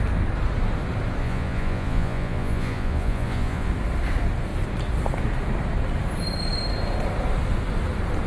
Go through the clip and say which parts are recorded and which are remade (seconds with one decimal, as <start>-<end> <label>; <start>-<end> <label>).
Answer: 0.0-1.2 recorded; 1.2-3.7 remade; 3.7-8.3 recorded